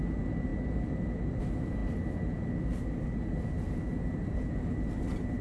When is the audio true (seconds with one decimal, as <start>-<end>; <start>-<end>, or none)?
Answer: 0.0-5.4